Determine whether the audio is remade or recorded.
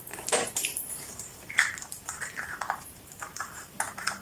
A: remade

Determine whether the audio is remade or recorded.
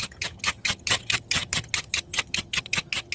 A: remade